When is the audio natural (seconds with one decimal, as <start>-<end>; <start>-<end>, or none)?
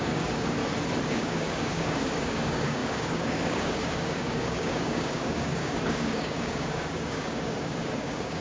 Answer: 0.6-1.1